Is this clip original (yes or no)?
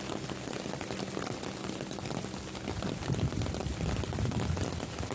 yes